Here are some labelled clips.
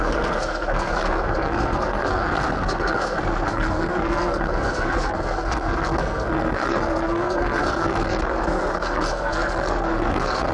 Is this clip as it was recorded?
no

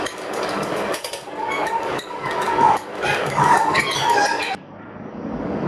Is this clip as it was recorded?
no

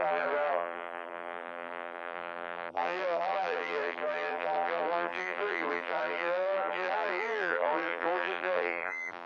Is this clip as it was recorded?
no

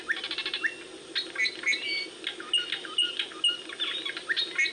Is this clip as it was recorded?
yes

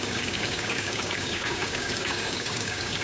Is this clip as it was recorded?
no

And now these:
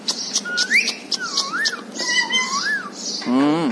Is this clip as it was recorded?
yes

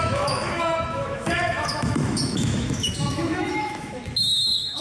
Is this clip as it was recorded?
no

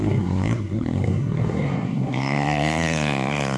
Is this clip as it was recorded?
no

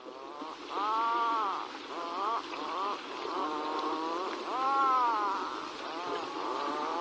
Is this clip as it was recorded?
yes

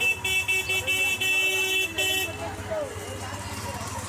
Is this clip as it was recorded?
yes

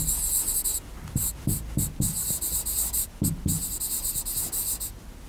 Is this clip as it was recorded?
yes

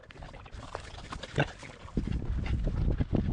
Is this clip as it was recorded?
yes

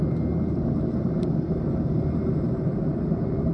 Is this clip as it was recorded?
yes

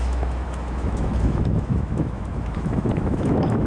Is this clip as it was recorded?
no